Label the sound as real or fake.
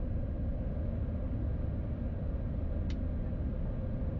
real